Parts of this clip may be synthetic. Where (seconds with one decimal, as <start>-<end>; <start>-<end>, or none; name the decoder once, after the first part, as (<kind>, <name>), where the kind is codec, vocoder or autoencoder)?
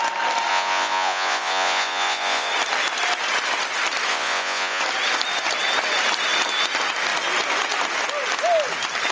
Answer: 0.5-2.5 (vocoder, Vocos); 4.1-4.8